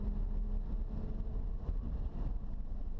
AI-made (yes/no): no